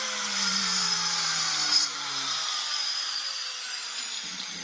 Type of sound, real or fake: fake